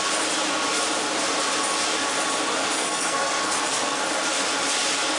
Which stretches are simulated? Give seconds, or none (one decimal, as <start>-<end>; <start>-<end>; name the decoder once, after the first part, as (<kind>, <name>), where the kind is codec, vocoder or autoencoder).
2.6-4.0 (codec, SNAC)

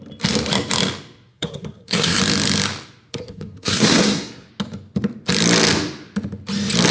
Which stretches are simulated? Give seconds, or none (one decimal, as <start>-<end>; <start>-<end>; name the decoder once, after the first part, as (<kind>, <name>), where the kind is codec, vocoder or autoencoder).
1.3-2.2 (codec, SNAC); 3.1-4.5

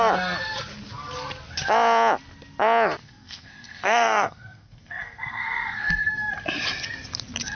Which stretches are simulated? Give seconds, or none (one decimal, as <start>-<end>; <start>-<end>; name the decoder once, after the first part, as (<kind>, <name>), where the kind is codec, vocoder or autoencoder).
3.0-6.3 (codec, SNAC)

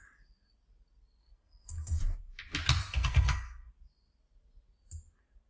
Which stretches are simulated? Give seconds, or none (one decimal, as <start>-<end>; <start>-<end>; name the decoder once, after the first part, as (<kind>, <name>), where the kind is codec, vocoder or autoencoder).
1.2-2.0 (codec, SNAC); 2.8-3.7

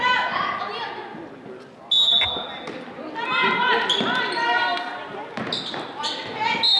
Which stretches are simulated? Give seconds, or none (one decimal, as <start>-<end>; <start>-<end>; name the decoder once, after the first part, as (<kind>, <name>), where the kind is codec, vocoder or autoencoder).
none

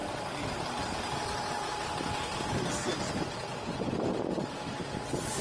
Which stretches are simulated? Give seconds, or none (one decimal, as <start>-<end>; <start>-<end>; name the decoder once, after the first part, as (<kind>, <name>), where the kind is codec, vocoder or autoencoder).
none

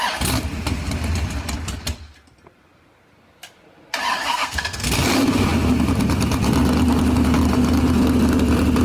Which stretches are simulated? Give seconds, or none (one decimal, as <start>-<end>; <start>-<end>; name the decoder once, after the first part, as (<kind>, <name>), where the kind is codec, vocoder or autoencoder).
4.1-4.9 (codec, SNAC)

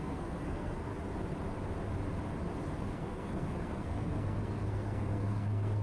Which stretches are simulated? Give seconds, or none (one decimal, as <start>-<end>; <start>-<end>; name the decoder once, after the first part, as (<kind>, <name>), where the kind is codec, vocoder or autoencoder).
0.0-0.9 (codec, SNAC); 2.8-5.8